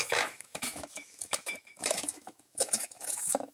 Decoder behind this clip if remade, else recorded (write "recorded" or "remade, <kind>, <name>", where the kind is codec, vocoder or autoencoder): remade, autoencoder, DAC-VAE